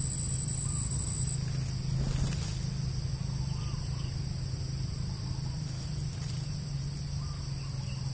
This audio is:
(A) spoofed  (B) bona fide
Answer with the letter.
B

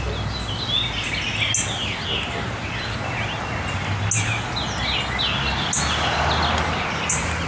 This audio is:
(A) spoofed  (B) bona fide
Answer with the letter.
B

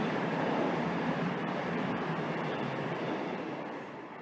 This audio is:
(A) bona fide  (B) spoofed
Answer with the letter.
B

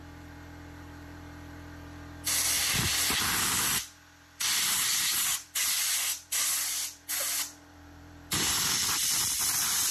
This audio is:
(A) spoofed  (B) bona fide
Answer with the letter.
A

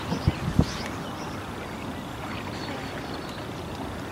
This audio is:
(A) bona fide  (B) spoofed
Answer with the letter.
A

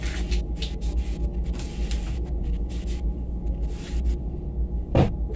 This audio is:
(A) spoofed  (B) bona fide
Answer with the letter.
B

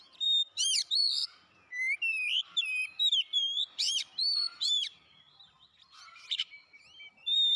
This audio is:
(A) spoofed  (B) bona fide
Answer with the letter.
A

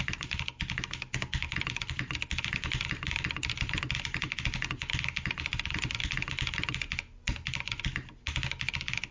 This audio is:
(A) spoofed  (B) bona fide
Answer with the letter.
B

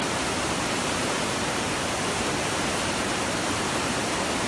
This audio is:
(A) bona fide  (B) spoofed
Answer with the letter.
B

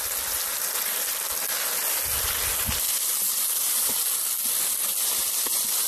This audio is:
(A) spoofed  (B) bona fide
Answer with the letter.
B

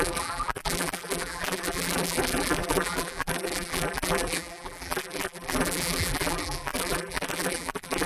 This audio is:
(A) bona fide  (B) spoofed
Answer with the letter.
B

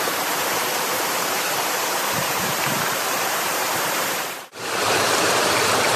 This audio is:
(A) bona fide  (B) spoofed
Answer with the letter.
B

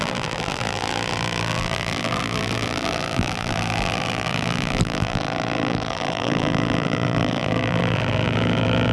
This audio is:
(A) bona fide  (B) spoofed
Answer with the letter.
B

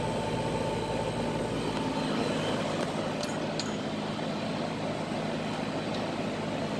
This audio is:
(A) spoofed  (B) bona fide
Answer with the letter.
B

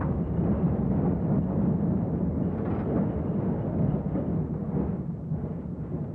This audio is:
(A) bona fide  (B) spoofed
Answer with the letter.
A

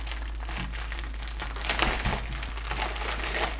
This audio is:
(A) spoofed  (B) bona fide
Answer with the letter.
B